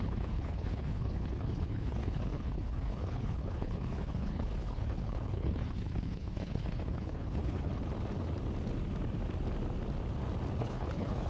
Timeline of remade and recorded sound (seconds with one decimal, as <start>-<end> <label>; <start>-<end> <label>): 0.0-7.7 remade; 7.7-10.6 recorded; 10.6-11.3 remade